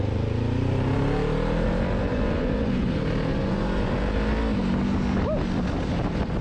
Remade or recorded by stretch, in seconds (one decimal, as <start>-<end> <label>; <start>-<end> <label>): 0.0-2.1 recorded; 2.1-2.9 remade; 2.9-3.3 recorded; 3.3-3.9 remade; 3.9-6.4 recorded